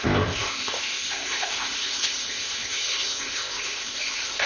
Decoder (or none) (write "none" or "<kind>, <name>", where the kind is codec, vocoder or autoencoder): codec, ZipCodec